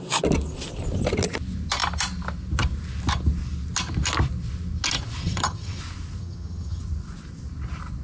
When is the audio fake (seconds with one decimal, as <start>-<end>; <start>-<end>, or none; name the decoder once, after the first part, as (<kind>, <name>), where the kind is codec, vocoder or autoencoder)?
5.2-5.8 (vocoder, HiFi-GAN); 6.2-6.8